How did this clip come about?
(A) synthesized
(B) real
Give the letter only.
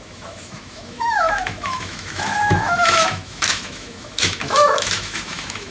A